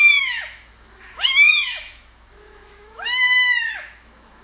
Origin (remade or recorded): remade